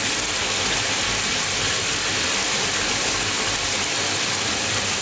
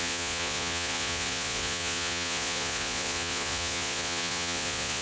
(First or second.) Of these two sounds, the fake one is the second